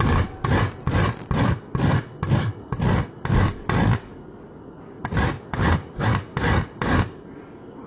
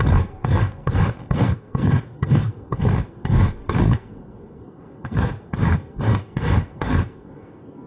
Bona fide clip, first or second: first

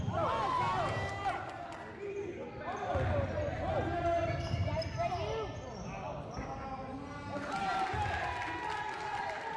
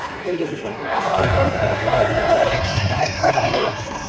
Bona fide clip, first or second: first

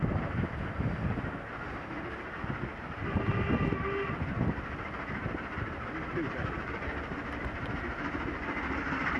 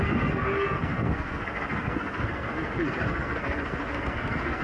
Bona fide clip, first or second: first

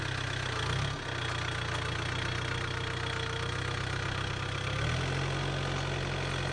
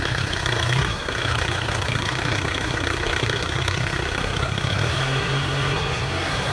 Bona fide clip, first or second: first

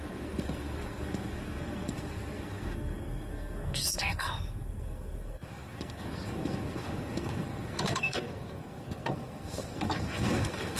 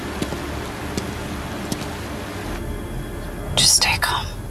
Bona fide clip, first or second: second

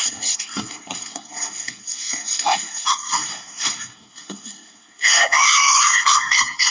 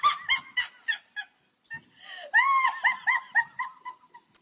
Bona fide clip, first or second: second